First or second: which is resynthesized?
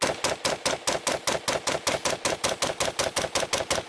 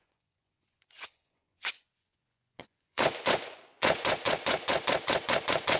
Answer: second